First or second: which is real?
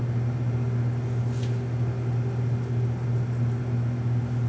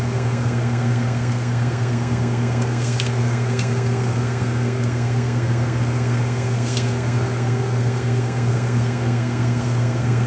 first